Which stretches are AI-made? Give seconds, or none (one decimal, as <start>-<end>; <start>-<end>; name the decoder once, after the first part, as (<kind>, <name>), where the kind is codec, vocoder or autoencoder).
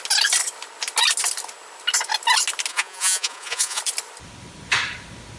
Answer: 2.7-3.8 (vocoder, Vocos)